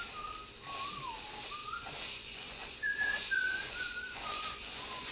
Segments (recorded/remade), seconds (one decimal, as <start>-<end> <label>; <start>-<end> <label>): 0.0-1.6 recorded; 1.6-5.1 remade